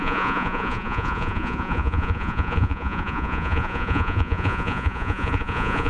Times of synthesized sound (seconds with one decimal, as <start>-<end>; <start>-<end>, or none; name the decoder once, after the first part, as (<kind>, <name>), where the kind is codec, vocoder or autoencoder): 0.0-5.9 (vocoder, Vocos)